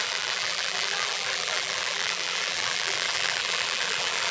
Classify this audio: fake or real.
fake